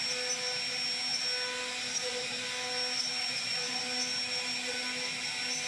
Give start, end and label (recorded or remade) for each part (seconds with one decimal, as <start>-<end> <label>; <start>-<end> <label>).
0.0-3.2 recorded; 3.2-3.8 remade; 3.8-5.7 recorded